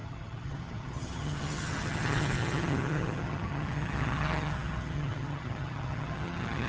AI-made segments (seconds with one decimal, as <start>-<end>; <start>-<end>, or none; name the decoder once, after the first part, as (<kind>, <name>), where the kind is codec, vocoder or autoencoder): 0.0-6.7 (vocoder, HiFi-GAN)